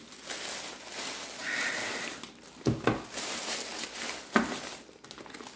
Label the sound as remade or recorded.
recorded